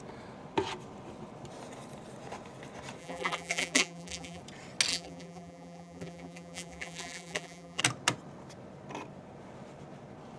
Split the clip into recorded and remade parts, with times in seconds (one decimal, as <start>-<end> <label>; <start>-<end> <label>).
0.0-3.0 recorded; 3.0-4.4 remade; 4.4-4.9 recorded; 4.9-7.8 remade; 7.8-10.4 recorded